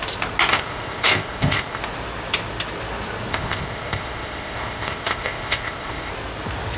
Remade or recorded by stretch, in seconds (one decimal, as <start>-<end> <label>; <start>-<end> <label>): 0.0-0.5 recorded; 0.5-1.8 remade; 1.8-3.3 recorded; 3.3-6.1 remade; 6.1-6.8 recorded